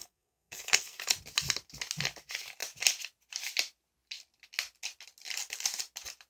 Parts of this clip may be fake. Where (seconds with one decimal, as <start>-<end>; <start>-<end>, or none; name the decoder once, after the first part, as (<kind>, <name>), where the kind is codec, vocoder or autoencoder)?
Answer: 0.0-1.0 (codec, SNAC)